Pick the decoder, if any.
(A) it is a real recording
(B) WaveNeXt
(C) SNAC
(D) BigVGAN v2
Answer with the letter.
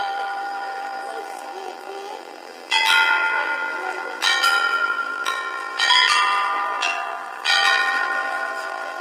D